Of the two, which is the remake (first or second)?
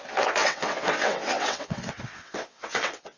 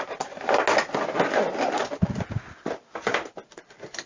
first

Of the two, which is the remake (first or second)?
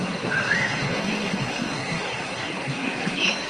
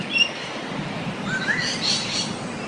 first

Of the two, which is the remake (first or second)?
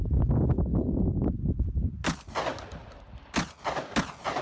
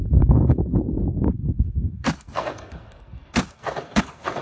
second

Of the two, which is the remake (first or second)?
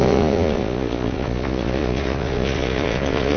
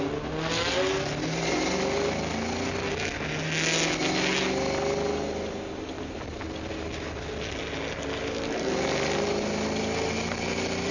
first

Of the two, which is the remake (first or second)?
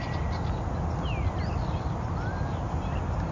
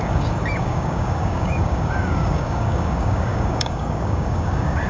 second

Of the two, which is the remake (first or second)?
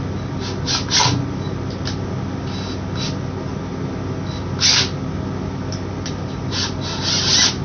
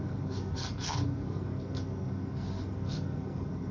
second